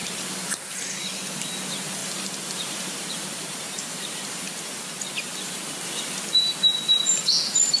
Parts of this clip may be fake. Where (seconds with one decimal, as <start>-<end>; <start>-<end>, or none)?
0.0-0.6; 2.0-4.8